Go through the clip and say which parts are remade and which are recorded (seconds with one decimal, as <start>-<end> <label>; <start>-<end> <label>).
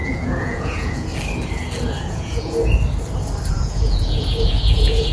0.0-1.1 remade; 1.1-2.0 recorded; 2.0-2.6 remade; 2.6-3.5 recorded; 3.5-5.1 remade